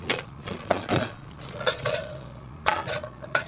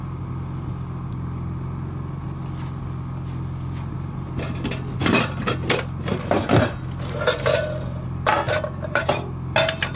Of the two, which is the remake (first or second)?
first